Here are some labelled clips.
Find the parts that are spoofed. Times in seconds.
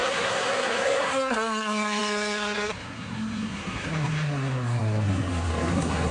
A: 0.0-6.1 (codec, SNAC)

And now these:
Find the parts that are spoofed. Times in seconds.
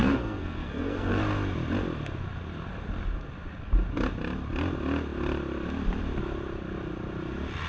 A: 0.0-1.2 (codec, SNAC)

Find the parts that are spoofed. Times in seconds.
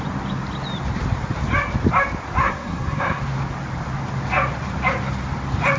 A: 2.4-3.2 (codec, SNAC)